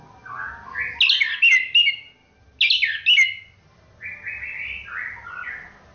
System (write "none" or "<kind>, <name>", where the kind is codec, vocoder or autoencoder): none